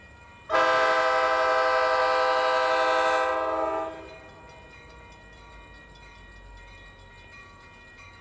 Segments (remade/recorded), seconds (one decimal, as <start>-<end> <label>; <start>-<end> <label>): 0.0-8.2 recorded